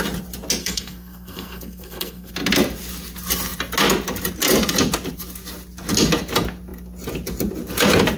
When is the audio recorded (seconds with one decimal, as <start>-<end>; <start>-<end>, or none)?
0.0-0.6; 2.3-8.2

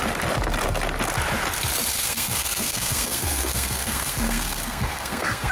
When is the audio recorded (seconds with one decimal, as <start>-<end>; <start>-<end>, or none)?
0.0-1.9